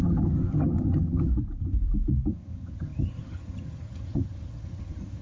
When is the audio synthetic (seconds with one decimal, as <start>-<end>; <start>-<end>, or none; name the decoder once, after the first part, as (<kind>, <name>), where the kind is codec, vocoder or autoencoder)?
0.0-1.3 (vocoder, HiFi-GAN); 2.3-5.2